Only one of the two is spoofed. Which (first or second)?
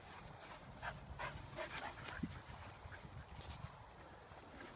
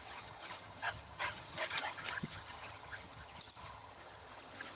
second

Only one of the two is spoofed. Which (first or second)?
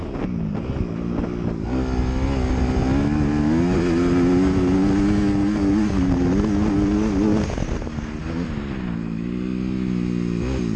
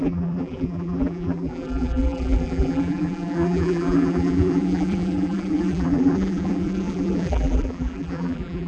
second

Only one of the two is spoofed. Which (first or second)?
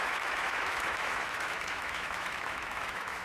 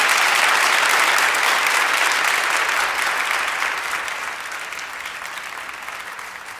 first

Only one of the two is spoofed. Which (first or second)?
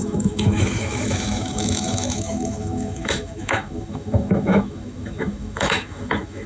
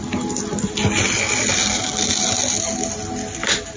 first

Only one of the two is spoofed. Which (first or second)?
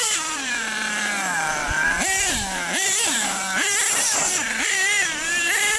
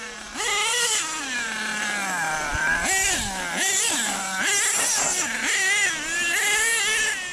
first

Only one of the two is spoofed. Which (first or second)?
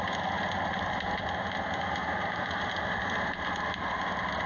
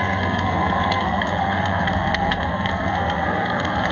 second